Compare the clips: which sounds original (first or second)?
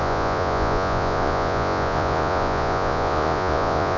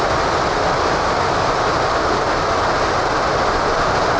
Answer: second